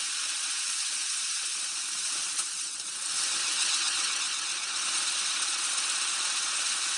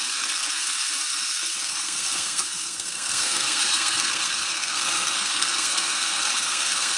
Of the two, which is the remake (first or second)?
second